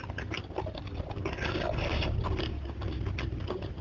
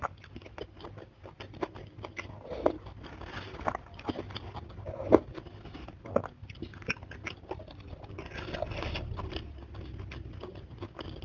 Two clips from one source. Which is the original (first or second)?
second